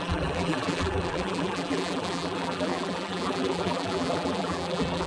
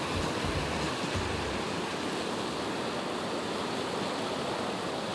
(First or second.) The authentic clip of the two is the second